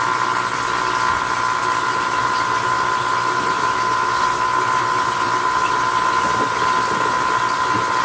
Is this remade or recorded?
recorded